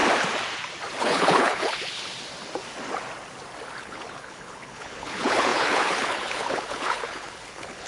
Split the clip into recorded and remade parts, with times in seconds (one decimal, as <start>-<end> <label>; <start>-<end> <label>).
0.0-1.0 recorded; 1.0-2.0 remade; 2.0-3.8 recorded; 3.8-7.9 remade